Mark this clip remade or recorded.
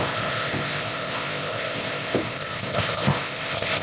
remade